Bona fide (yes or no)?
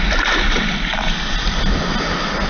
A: yes